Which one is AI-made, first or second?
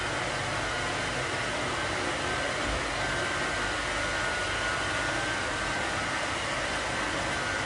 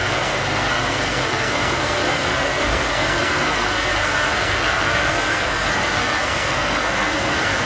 second